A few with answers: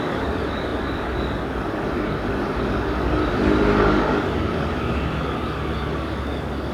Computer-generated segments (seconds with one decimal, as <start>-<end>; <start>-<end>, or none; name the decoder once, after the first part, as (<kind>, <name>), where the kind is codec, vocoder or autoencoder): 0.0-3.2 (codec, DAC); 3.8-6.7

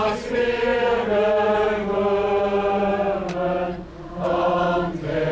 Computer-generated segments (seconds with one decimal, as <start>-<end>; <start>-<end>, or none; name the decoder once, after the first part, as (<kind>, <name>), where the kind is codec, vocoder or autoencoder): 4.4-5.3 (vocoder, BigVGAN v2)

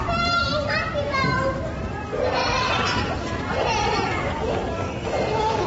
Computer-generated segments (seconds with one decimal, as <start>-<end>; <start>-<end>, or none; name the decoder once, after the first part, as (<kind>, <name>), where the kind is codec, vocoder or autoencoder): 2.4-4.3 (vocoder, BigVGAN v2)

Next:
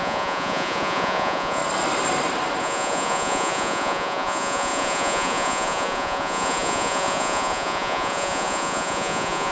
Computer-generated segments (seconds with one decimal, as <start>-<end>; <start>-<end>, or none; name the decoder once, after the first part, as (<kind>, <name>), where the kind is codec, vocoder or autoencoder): 0.0-1.6 (vocoder, Vocos); 2.6-9.5

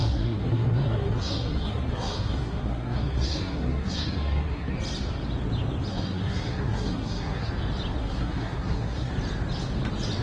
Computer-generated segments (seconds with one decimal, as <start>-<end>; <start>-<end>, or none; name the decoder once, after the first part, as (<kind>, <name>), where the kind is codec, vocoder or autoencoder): 0.0-4.7 (codec, SNAC); 5.9-7.5; 8.0-9.1

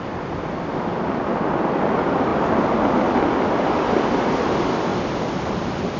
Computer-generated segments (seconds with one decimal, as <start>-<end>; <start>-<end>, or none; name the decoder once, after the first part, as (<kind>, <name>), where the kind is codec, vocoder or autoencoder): none

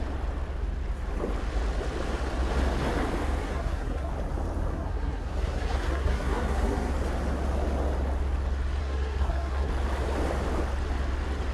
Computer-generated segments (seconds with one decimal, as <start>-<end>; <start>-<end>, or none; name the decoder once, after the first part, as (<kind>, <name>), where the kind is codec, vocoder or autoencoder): 3.4-4.1 (codec, SNAC); 4.7-6.9; 8.8-9.7

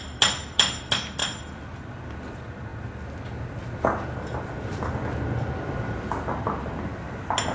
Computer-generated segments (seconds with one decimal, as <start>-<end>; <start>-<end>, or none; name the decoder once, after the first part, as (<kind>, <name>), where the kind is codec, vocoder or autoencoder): none